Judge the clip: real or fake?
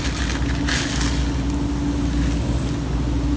real